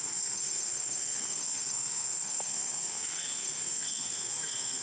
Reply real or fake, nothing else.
fake